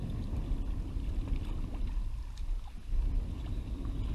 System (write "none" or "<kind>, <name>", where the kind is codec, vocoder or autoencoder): none